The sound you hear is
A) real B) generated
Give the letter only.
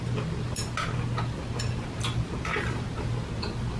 A